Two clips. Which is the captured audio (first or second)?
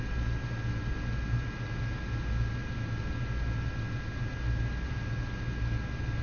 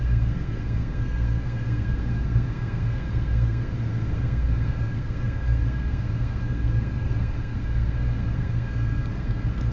first